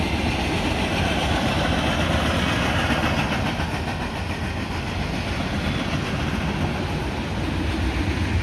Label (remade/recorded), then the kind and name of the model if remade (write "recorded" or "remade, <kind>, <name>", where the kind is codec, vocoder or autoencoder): recorded